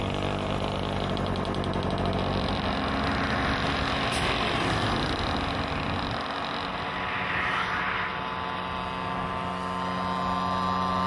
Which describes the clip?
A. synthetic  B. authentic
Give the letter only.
B